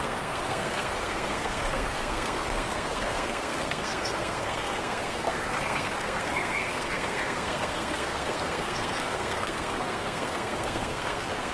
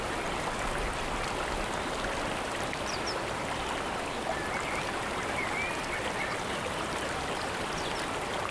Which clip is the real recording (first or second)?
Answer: second